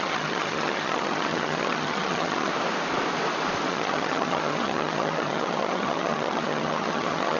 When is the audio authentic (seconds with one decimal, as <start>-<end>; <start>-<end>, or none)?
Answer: 2.5-3.7